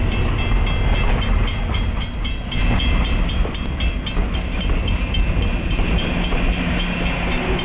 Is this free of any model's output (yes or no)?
yes